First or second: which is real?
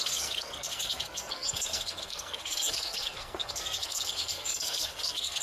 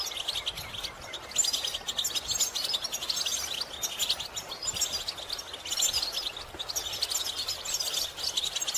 second